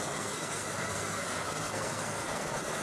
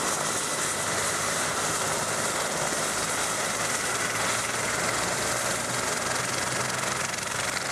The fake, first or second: first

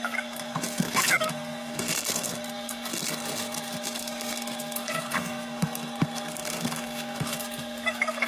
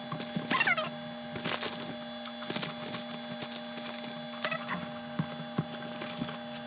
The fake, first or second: first